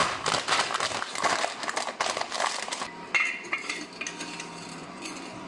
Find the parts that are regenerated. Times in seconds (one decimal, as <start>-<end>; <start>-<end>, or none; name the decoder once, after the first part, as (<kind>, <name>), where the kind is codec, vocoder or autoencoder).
4.8-5.5 (vocoder, Vocos)